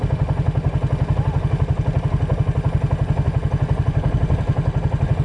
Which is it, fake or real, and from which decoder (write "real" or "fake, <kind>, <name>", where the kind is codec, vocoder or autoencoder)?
real